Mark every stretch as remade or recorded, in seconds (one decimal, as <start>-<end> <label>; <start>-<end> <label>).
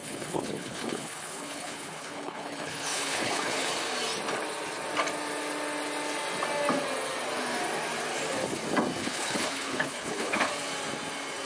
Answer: 0.0-3.7 remade; 3.7-9.0 recorded; 9.0-10.5 remade; 10.5-11.5 recorded